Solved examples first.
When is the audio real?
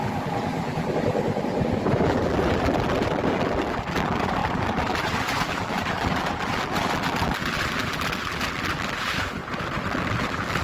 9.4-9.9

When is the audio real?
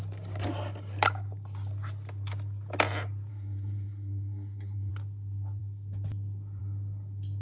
0.0-3.3; 4.9-7.4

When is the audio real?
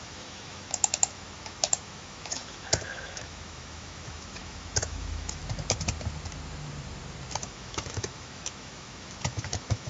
5.4-7.4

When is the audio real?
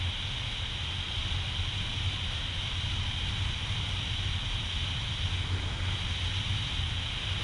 0.0-7.4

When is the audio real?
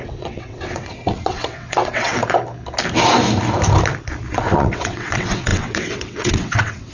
2.2-4.3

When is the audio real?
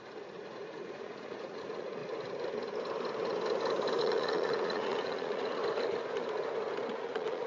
2.0-4.0; 5.6-6.9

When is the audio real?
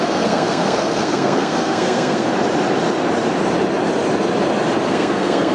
2.3-4.8